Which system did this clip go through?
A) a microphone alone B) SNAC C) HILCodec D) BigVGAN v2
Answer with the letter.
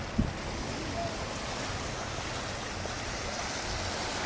A